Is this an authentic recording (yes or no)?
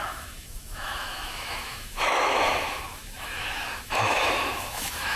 no